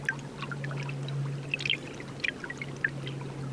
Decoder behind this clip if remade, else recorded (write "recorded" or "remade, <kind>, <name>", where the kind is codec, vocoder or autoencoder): recorded